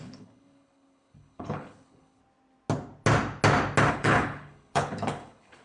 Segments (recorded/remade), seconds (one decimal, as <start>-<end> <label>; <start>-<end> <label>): 0.0-2.2 remade; 2.2-3.9 recorded; 3.9-5.6 remade